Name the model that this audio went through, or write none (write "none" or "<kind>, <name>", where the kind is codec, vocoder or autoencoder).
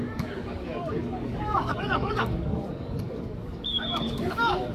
codec, DAC